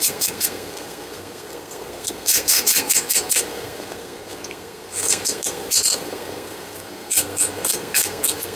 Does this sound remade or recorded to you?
remade